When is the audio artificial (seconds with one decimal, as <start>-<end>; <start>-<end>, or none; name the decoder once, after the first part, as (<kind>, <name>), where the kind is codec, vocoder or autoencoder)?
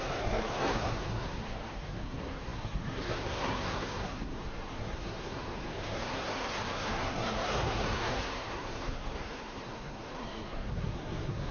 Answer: 0.0-11.5 (codec, SNAC)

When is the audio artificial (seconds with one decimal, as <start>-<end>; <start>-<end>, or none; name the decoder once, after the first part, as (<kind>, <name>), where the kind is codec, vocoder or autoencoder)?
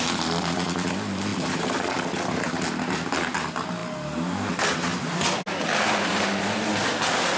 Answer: none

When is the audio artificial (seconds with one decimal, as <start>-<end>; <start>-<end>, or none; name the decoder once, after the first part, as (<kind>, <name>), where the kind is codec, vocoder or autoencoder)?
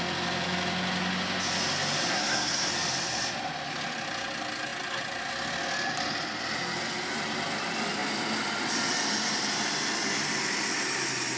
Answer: 2.1-2.7 (codec, SNAC)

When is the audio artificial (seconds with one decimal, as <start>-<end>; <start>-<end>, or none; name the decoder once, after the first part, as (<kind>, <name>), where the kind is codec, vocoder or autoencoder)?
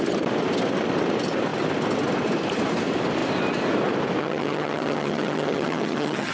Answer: 4.2-6.3 (vocoder, HiFi-GAN)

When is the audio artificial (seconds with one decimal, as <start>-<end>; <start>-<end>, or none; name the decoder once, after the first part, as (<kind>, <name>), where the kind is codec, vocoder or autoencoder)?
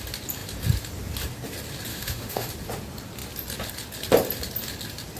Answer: 1.9-2.5 (autoencoder, DAC-VAE)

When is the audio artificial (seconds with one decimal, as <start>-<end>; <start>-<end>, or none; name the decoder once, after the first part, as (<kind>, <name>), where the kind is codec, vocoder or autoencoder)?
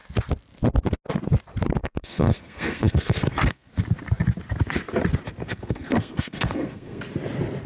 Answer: 1.8-3.7 (codec, SNAC); 5.4-7.0